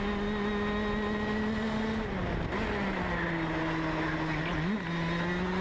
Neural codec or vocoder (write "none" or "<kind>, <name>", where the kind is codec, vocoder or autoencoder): none